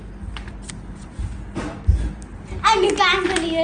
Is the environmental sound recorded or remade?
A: recorded